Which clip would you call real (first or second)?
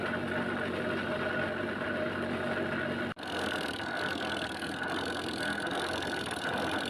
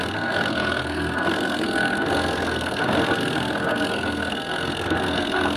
first